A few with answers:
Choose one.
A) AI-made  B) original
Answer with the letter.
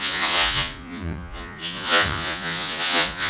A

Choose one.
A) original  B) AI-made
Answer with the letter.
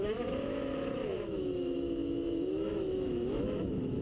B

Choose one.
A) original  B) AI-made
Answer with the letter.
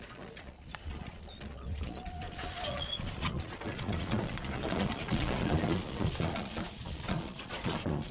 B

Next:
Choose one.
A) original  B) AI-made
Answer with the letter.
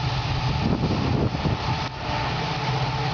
A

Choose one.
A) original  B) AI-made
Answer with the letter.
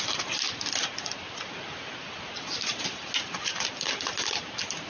A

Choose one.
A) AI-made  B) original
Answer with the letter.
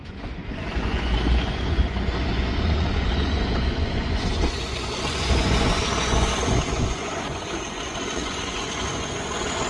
A